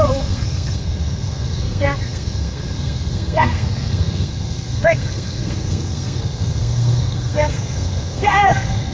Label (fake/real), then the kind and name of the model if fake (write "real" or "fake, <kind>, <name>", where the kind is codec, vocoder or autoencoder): fake, codec, SNAC